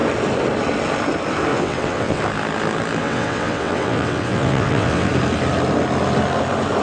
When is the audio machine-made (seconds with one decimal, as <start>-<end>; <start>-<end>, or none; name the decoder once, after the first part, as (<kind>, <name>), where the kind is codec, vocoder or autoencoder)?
1.5-2.2 (vocoder, WaveNeXt); 3.0-5.1